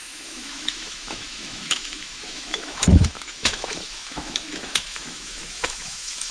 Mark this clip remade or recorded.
remade